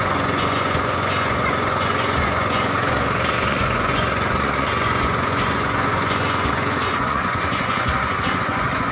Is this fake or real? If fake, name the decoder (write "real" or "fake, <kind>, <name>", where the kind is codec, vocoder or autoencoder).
fake, vocoder, Vocos